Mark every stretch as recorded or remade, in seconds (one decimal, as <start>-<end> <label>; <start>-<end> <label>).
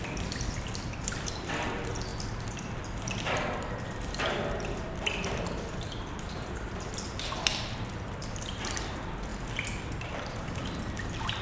0.0-9.3 remade; 9.3-9.8 recorded; 9.8-11.4 remade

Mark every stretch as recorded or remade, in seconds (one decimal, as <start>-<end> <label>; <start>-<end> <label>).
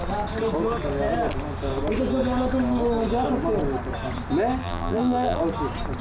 0.0-4.6 recorded; 4.6-5.4 remade; 5.4-6.0 recorded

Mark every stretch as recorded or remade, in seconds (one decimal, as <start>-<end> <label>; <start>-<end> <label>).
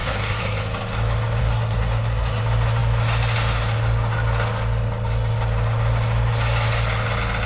0.0-0.6 remade; 0.6-1.4 recorded; 1.4-2.4 remade; 2.4-7.5 recorded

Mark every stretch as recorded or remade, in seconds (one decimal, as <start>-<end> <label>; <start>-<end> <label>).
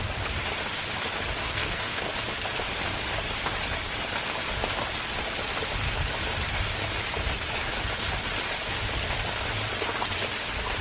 0.0-1.4 recorded; 1.4-2.1 remade; 2.1-10.8 recorded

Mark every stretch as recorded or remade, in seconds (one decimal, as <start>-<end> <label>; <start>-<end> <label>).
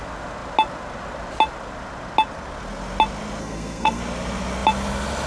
0.0-3.4 recorded; 3.4-4.0 remade; 4.0-5.3 recorded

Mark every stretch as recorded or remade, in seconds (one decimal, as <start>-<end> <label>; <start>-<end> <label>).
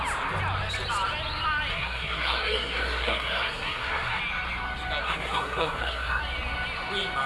0.0-1.7 recorded; 1.7-4.2 remade; 4.2-5.0 recorded; 5.0-6.2 remade; 6.2-7.3 recorded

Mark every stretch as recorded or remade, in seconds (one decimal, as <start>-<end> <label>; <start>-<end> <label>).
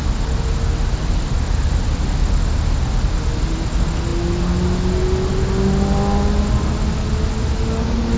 0.0-8.2 recorded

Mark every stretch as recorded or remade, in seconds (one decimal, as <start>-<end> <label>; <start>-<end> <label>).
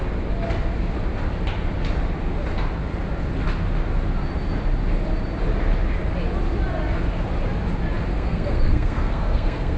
0.0-8.1 recorded; 8.1-9.8 remade